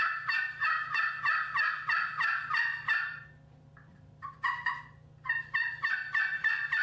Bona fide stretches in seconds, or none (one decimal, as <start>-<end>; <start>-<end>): 0.0-2.7; 4.7-6.8